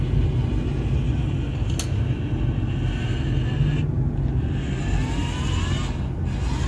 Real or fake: real